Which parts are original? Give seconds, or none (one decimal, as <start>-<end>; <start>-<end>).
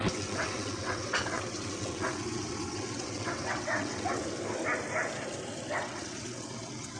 4.2-5.8